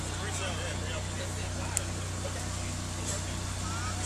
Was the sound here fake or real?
real